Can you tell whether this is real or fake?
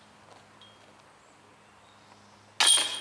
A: real